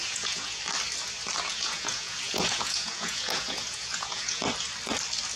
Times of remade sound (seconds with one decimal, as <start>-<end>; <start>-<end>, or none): 0.0-0.6; 1.5-4.4